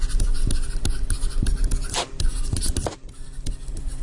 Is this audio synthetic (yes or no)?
no